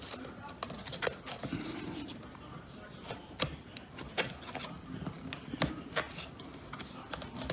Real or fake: real